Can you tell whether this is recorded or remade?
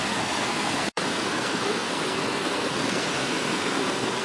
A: remade